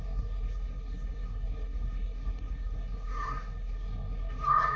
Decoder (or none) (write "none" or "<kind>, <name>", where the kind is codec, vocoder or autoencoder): codec, SNAC